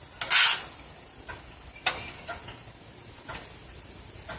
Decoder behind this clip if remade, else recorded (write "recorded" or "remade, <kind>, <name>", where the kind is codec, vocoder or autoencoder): recorded